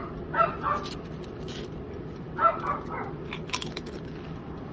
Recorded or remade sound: recorded